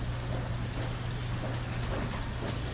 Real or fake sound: real